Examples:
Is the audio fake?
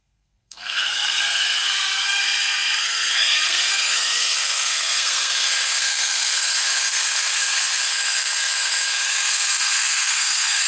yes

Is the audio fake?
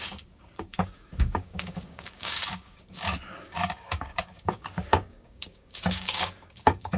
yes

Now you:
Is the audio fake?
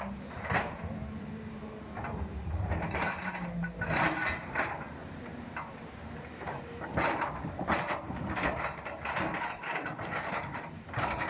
yes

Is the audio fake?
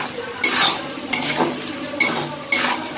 no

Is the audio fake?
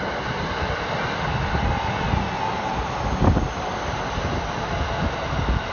no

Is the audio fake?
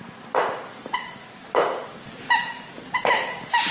no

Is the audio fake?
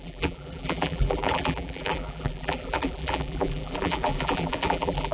yes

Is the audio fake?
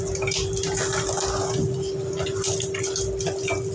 no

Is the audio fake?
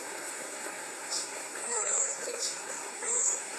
yes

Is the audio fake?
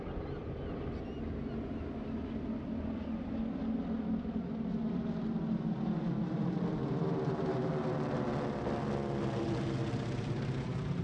no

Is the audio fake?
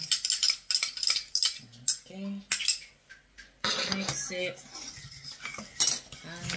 no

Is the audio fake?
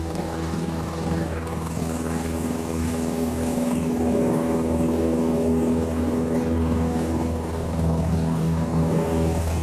yes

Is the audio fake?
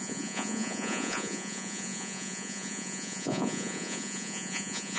yes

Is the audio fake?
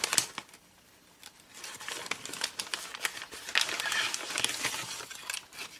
no